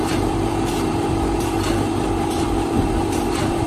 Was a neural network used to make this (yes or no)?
yes